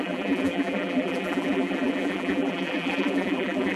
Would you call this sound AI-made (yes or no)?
yes